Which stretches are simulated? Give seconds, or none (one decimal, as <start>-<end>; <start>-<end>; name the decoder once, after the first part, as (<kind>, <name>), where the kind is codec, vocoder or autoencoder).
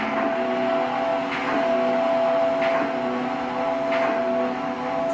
none